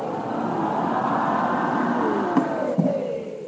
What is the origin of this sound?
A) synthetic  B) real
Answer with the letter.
B